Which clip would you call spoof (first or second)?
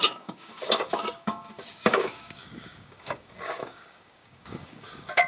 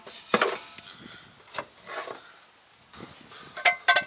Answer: first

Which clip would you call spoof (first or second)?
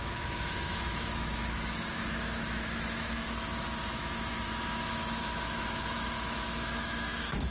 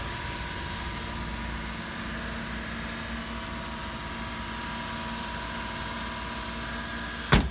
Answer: first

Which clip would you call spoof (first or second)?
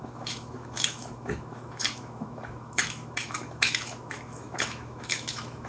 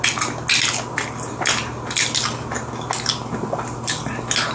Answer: first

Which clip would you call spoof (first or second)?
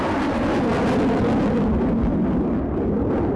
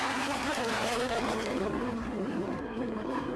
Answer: second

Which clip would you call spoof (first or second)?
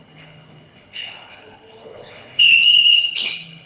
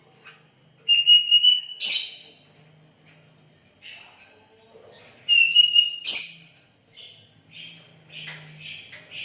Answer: first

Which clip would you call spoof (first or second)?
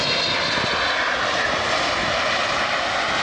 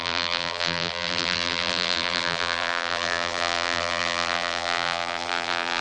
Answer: second